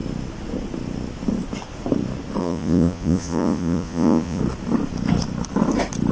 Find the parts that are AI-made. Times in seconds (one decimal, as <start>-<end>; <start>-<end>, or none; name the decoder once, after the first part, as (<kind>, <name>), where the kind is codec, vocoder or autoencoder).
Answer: 2.4-4.4 (vocoder, Vocos)